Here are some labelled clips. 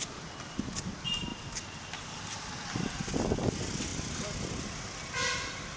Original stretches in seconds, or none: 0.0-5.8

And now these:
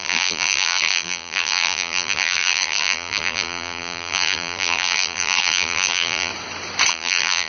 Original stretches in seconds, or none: 6.3-6.9

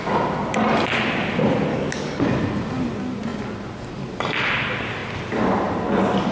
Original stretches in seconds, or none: 0.0-1.7; 2.2-6.3

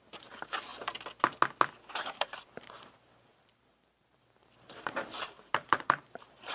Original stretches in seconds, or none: 0.7-1.9

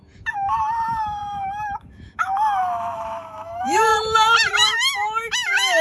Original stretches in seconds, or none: 3.9-4.5